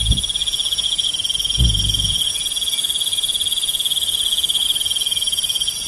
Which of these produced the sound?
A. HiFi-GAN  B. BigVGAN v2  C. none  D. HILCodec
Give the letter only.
C